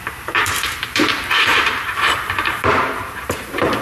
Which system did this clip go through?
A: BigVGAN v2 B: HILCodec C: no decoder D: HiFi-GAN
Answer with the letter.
A